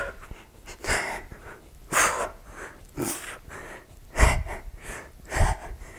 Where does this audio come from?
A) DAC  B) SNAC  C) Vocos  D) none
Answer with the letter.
D